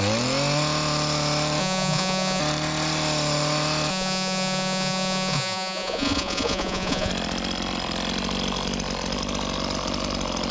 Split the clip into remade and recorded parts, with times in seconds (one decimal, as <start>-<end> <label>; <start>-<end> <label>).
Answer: 0.0-1.6 recorded; 1.6-2.4 remade; 2.4-3.9 recorded; 3.9-7.1 remade; 7.1-10.5 recorded